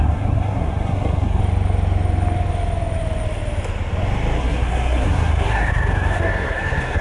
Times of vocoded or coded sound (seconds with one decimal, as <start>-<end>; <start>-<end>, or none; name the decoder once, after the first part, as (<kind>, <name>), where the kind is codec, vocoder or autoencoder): 0.0-1.4 (codec, SNAC); 4.4-7.0